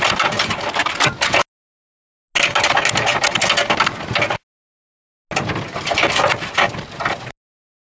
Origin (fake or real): real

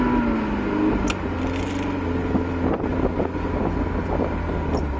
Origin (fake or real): real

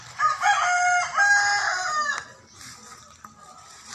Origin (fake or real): real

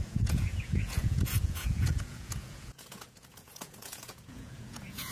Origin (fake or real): fake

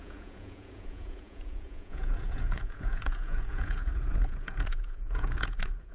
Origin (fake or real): fake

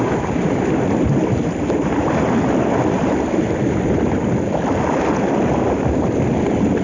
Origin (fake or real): real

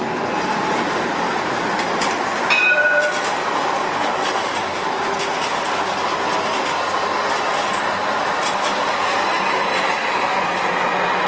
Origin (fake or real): real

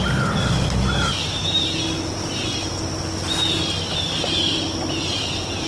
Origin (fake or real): real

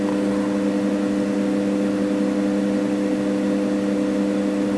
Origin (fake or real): real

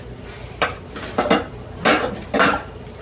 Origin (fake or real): real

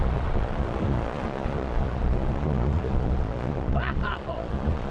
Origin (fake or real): fake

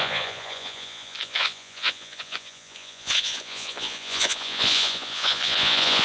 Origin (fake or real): fake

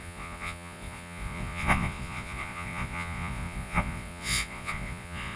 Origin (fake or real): fake